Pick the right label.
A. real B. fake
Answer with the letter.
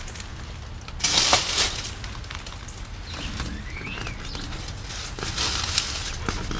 A